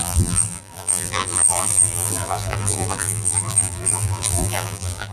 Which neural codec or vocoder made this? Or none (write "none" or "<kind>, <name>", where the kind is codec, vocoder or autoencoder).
vocoder, BigVGAN v2